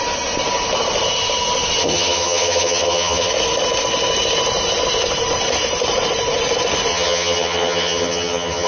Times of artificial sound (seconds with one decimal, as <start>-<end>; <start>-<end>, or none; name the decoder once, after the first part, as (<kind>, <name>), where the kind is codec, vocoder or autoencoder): 1.8-3.3 (vocoder, HiFi-GAN); 6.9-8.7